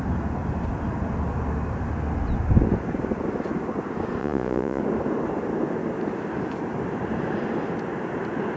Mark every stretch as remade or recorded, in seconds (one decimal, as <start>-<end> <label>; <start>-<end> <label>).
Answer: 0.0-4.2 recorded; 4.2-4.8 remade; 4.8-8.6 recorded